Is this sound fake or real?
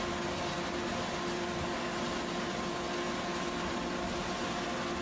real